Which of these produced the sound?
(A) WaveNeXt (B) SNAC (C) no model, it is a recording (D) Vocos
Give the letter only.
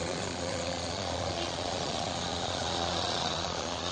D